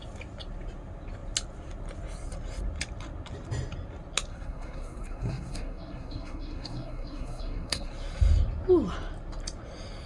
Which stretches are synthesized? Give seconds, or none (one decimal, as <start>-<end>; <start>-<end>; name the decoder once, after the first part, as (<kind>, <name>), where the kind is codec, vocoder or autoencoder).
4.3-7.9 (codec, SNAC)